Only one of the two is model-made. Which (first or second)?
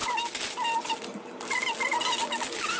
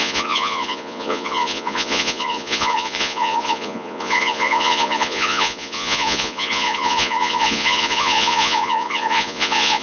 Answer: second